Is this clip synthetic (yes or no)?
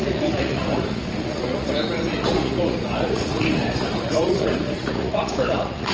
yes